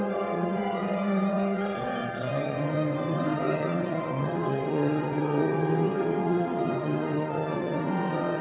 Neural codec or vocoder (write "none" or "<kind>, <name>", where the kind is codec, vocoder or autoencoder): vocoder, WaveNeXt